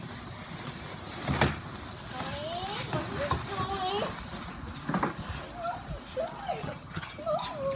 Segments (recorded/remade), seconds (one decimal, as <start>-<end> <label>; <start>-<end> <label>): 0.0-6.6 recorded; 6.6-7.2 remade; 7.2-7.8 recorded